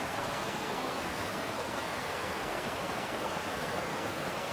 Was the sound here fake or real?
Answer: fake